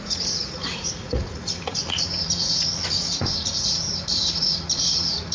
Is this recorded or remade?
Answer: remade